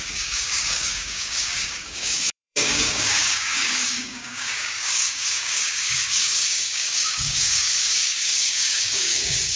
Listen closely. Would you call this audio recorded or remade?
remade